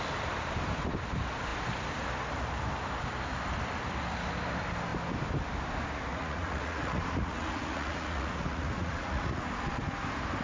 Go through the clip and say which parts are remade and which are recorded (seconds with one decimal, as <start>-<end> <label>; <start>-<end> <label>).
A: 0.0-6.1 recorded; 6.1-9.5 remade; 9.5-10.4 recorded